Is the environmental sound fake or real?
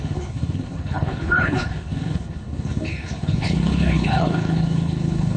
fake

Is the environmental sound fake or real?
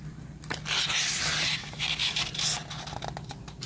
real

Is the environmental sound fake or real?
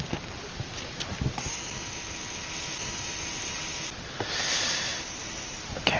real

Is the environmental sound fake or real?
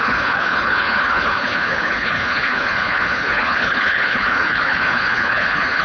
fake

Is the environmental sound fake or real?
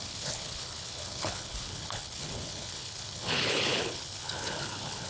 fake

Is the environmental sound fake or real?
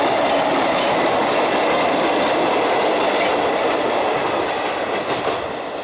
real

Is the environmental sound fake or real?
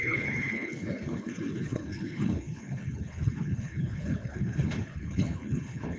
fake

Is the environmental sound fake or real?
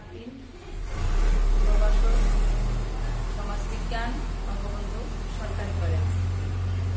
real